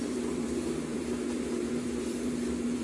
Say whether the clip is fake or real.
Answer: fake